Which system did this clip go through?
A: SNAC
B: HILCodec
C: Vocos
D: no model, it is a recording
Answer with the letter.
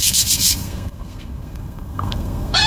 A